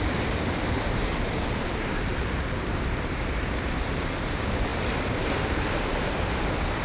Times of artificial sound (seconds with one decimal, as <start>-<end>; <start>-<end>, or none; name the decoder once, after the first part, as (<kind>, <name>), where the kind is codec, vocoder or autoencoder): 0.0-6.8 (vocoder, BigVGAN v2)